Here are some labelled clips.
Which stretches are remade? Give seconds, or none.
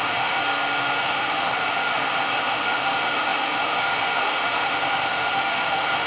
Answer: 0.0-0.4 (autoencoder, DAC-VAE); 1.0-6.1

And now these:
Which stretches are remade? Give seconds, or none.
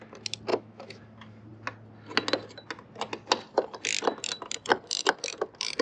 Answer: 0.5-1.0 (autoencoder, DAC-VAE)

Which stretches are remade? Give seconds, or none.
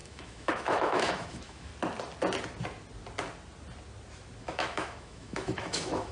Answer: 0.0-1.7 (autoencoder, DAC-VAE); 4.4-6.1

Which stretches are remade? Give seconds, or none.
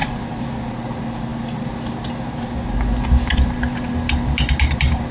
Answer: none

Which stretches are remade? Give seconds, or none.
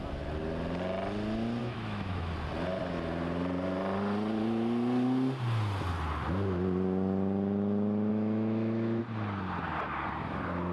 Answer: 1.6-2.3 (autoencoder, DAC-VAE); 8.1-9.0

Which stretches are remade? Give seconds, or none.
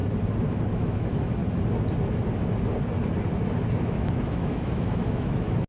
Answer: 0.7-1.4 (autoencoder, DAC-VAE); 3.8-5.7